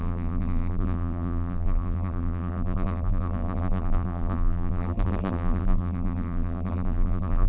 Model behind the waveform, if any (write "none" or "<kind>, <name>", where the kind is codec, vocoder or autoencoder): vocoder, BigVGAN v2